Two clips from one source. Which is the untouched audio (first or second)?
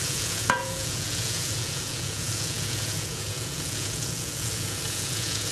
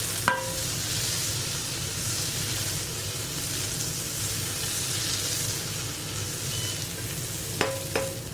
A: second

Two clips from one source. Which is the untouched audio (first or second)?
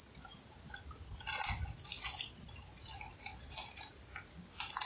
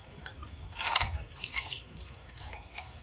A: first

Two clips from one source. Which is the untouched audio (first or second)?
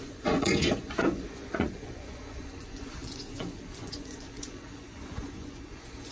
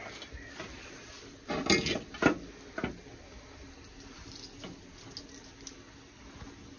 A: second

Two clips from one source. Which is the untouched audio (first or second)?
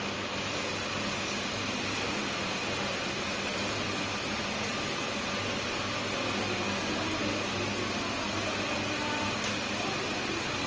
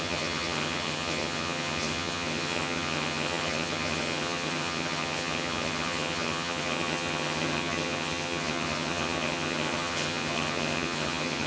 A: first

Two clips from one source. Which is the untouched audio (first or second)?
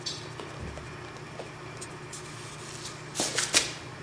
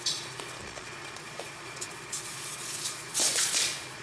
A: first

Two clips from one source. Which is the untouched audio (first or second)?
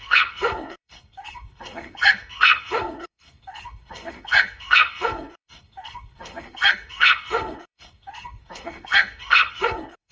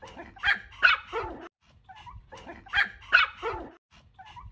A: second